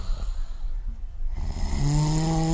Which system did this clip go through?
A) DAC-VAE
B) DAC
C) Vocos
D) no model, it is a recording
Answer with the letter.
D